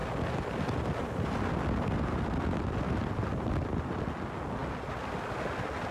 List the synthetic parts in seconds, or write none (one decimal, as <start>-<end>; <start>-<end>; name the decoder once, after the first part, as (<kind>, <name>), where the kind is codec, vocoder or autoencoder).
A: 0.0-3.5 (vocoder, BigVGAN v2)